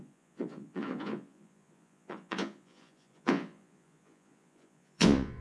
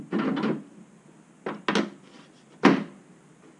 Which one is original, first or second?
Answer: second